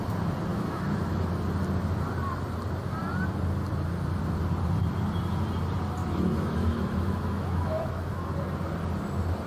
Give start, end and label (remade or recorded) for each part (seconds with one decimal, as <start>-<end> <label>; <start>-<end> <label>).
0.0-0.5 recorded; 0.5-1.3 remade; 1.3-6.0 recorded; 6.0-8.3 remade; 8.3-9.5 recorded